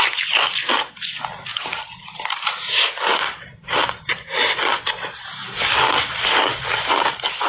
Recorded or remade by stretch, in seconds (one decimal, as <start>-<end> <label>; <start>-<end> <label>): 0.0-7.5 recorded